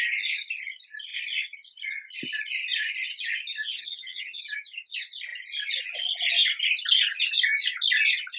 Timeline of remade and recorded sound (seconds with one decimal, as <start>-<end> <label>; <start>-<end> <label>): 0.0-3.6 recorded; 3.6-4.4 remade; 4.4-8.4 recorded